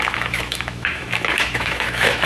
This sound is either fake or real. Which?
fake